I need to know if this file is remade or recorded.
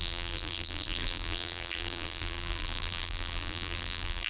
remade